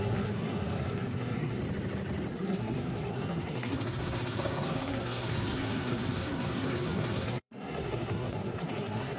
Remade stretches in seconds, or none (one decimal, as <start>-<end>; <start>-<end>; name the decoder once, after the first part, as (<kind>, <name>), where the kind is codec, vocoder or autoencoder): 0.0-1.6 (codec, SNAC); 2.3-9.2